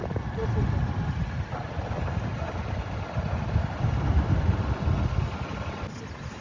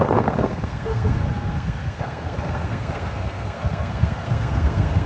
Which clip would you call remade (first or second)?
second